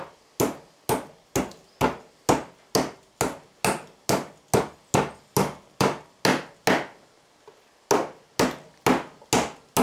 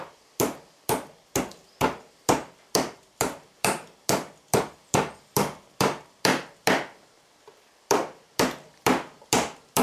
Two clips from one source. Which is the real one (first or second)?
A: first